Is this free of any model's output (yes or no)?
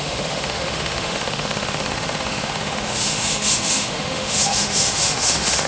no